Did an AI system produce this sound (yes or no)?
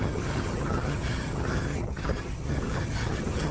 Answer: yes